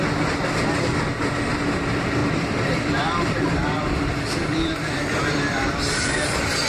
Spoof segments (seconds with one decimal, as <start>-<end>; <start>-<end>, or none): 2.2-6.0